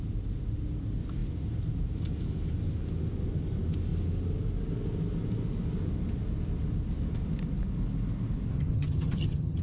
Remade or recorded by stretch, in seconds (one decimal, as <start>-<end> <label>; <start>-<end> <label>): 0.0-8.5 recorded; 8.5-9.6 remade